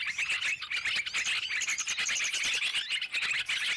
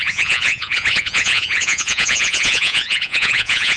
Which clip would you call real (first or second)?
first